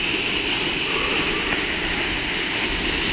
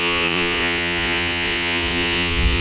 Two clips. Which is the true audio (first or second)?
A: first